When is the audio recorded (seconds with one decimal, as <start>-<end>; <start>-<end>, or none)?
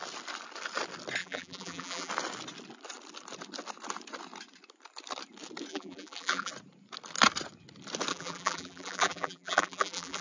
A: 0.0-1.2; 2.1-5.7; 6.5-8.1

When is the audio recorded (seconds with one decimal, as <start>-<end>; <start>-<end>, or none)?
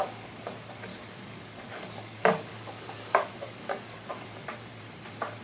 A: 0.0-0.9; 4.1-5.4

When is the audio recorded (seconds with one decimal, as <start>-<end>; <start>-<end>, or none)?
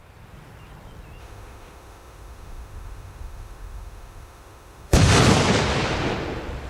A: 0.0-1.2; 5.2-6.7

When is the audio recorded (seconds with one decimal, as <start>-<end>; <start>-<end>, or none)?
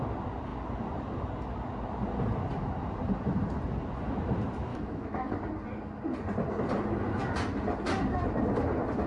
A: 0.0-4.7; 5.3-9.1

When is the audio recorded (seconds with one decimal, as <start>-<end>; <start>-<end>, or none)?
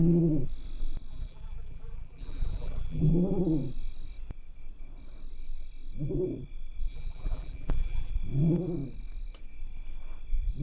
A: 0.0-1.1; 3.1-6.9; 8.1-10.6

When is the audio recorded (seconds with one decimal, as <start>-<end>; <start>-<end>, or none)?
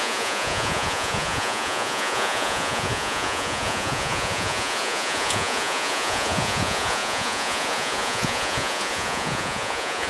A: none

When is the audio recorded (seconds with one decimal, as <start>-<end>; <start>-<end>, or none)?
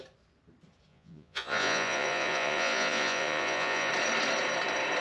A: 0.0-0.9; 3.9-5.0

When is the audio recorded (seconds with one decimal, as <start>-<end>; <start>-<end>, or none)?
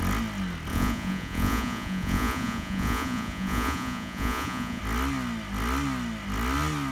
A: 0.0-0.7; 4.8-6.9